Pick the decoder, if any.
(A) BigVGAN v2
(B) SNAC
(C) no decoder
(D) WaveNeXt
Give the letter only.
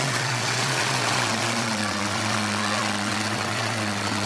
D